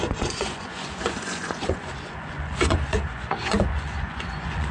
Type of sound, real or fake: fake